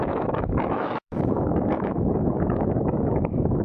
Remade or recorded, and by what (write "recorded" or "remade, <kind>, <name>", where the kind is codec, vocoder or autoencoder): remade, autoencoder, DAC-VAE